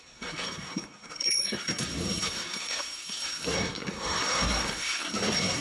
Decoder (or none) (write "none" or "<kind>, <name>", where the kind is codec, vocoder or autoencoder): codec, SNAC